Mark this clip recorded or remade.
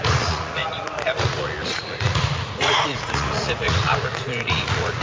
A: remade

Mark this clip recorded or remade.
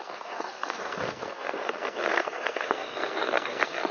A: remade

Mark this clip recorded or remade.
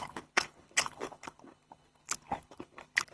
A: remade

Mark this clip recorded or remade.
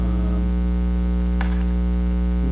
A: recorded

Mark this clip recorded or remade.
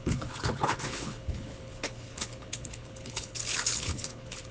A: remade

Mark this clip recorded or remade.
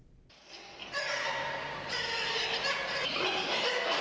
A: recorded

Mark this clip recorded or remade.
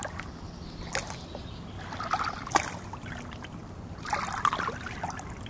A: recorded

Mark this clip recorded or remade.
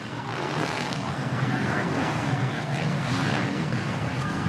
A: remade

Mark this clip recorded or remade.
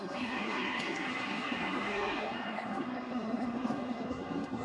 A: remade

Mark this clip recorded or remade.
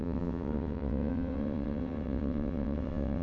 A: remade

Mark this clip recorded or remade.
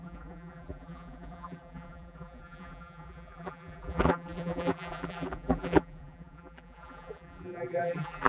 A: remade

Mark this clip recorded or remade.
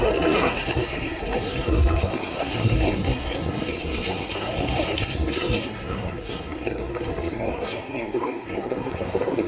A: remade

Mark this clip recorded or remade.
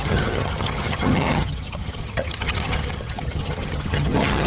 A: remade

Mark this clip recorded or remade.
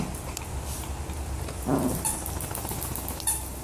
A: recorded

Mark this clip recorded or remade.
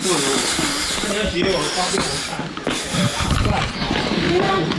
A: recorded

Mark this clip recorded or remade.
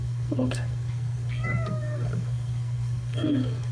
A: remade